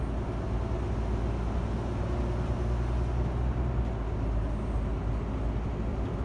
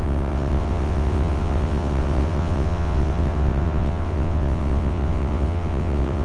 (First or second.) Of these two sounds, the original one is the first